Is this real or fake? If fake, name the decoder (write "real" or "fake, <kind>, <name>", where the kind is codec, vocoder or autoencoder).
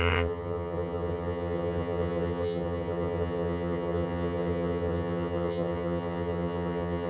fake, vocoder, HiFi-GAN